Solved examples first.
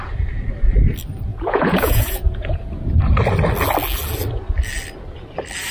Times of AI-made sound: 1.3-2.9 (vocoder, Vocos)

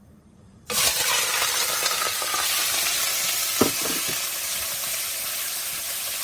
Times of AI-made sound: 0.0-3.1 (vocoder, BigVGAN v2); 5.4-6.2

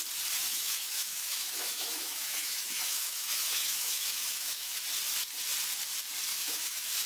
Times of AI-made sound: 0.5-4.8 (autoencoder, DAC-VAE); 6.3-7.1

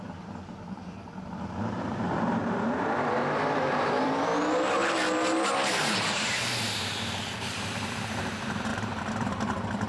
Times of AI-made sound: 0.0-4.3 (vocoder, BigVGAN v2); 5.8-9.9

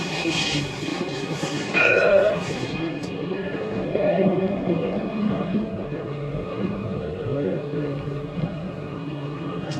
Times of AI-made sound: 0.0-9.8 (codec, SNAC)